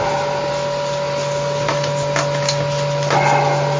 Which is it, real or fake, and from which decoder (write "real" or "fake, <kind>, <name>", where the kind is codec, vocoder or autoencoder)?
real